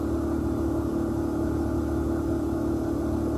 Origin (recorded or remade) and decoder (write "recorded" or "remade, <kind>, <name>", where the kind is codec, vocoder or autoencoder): recorded